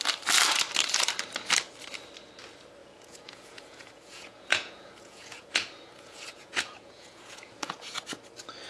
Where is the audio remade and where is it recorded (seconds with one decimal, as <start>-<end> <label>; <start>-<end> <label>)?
0.0-2.8 recorded; 2.8-8.0 remade; 8.0-8.7 recorded